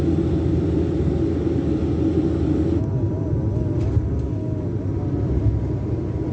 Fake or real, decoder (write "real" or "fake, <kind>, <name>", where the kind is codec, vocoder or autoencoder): real